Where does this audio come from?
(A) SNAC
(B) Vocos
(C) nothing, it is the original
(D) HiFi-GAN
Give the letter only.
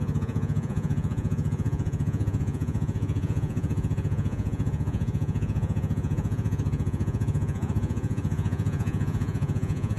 B